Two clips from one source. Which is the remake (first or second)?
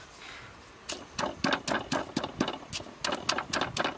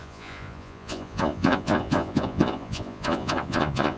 second